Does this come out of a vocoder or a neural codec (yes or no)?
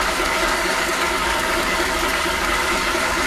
yes